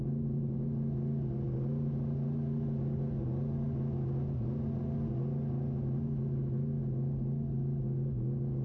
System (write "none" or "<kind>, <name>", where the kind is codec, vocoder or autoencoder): none